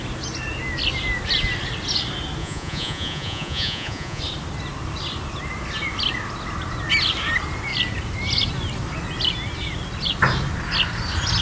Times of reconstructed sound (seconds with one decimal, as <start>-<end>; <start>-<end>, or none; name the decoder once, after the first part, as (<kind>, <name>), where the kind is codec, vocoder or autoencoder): 2.4-4.2 (vocoder, Vocos)